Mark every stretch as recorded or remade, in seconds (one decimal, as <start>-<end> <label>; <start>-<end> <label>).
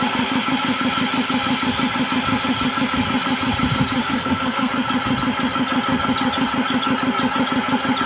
0.0-4.0 recorded; 4.0-4.7 remade; 4.7-8.1 recorded